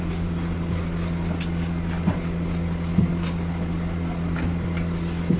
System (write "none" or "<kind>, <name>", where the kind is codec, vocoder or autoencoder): none